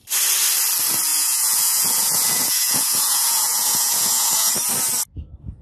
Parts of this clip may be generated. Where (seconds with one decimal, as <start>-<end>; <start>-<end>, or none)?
1.1-4.5